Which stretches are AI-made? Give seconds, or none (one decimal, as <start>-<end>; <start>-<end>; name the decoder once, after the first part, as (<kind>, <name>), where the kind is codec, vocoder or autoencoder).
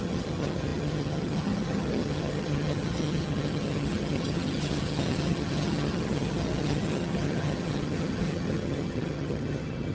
0.0-9.9 (vocoder, HiFi-GAN)